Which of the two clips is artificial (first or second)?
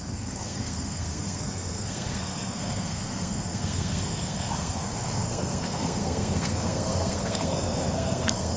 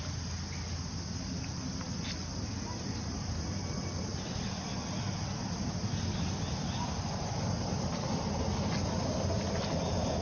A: first